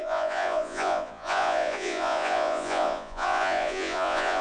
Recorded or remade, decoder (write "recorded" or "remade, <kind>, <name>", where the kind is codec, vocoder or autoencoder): remade, vocoder, Vocos